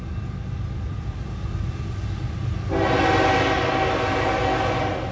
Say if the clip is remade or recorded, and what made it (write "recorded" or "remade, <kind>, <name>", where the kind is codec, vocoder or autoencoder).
recorded